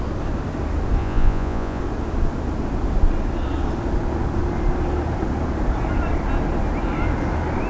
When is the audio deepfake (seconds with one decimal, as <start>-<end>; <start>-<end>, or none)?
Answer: 1.0-1.8